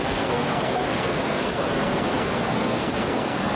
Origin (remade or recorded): remade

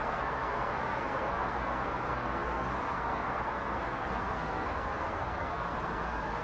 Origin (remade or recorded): remade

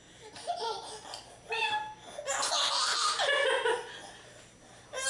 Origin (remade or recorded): recorded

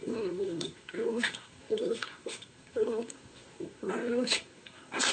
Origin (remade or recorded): remade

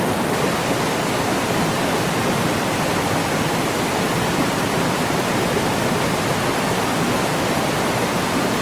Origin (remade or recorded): recorded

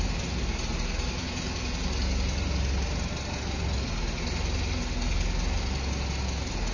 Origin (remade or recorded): recorded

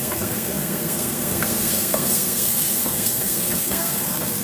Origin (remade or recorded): remade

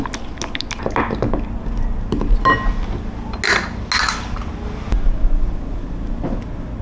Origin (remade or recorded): recorded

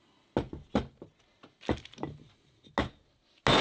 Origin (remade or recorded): recorded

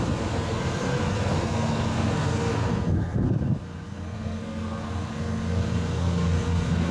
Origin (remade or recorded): remade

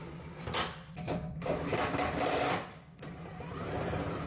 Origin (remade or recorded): recorded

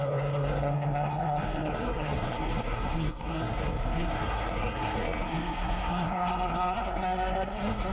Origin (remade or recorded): remade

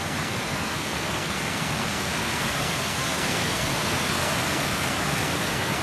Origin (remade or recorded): remade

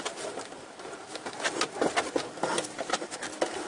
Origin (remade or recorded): recorded